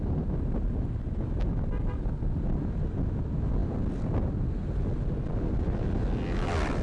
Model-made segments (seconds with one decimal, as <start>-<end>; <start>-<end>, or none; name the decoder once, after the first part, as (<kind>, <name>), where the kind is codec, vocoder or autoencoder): none